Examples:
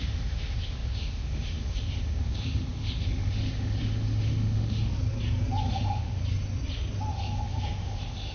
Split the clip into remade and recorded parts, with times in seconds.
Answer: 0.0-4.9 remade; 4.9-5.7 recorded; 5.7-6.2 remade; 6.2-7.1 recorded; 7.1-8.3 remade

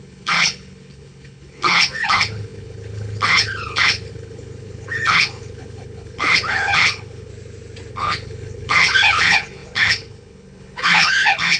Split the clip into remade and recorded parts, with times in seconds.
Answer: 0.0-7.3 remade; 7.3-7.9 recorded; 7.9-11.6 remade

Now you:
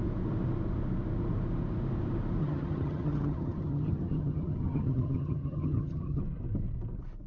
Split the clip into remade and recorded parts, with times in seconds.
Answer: 0.0-2.4 recorded; 2.4-6.2 remade; 6.2-7.3 recorded